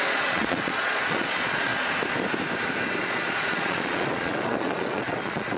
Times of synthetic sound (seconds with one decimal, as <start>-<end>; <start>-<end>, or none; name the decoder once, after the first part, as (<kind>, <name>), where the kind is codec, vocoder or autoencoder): 0.0-1.7 (vocoder, Vocos); 3.0-5.6